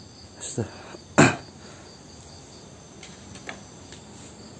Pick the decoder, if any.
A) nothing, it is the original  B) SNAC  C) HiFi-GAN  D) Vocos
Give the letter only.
A